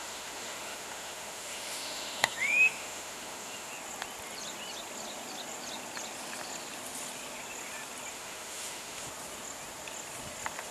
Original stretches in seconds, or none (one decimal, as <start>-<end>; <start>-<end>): 3.7-8.1; 9.1-10.7